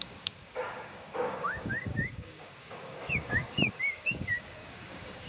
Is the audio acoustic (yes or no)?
no